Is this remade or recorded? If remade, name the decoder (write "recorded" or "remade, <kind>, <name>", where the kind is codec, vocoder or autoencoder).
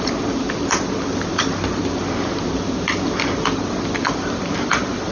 recorded